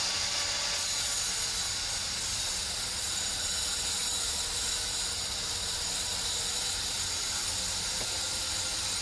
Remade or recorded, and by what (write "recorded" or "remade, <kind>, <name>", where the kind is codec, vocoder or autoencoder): recorded